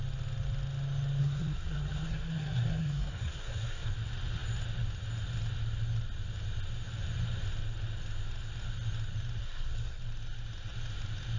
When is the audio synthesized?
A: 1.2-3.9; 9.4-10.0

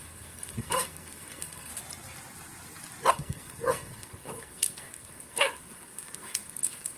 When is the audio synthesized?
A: 0.0-1.7; 3.1-7.0

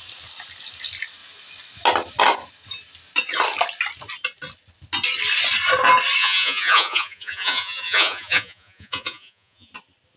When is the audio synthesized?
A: 6.2-9.7

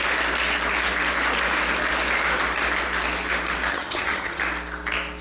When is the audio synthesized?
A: 3.7-4.4

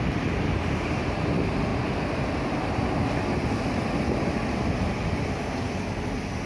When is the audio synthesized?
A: none

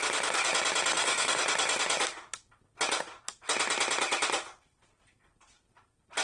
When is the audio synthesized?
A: 0.9-1.4